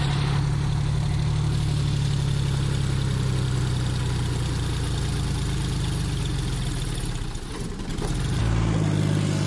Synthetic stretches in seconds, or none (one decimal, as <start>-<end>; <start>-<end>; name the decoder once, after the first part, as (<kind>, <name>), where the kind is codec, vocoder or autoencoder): none